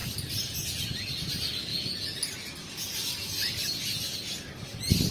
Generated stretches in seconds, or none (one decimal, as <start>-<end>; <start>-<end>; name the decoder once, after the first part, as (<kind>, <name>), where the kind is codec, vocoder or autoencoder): none